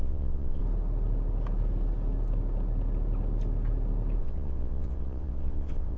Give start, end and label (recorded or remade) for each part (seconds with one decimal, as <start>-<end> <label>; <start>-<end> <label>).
0.0-0.6 remade; 0.6-4.2 recorded; 4.2-6.0 remade